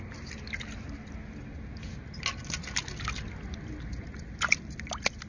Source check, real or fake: real